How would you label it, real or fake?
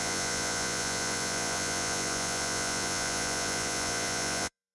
fake